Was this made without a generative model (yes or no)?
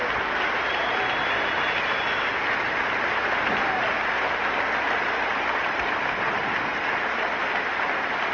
yes